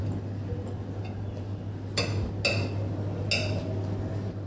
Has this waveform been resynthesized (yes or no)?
no